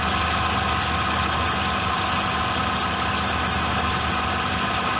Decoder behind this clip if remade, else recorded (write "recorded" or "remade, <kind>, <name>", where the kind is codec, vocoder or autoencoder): recorded